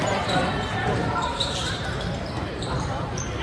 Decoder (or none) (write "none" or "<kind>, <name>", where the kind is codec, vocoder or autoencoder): vocoder, BigVGAN v2